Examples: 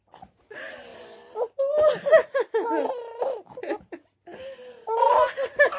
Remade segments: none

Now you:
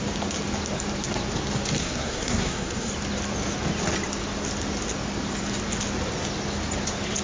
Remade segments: 1.8-2.9 (codec, SNAC)

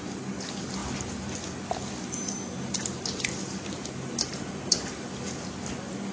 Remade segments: none

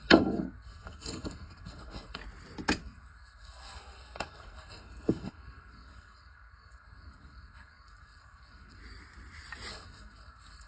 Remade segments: 0.0-2.2 (codec, SNAC); 2.8-8.8; 9.7-10.7